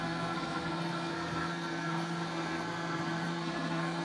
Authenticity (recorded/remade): remade